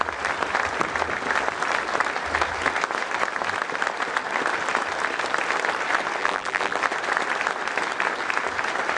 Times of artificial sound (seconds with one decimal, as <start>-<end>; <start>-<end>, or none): 6.2-6.8